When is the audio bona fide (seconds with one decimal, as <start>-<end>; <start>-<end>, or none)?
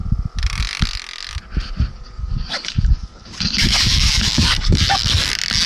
0.0-1.9; 5.3-5.7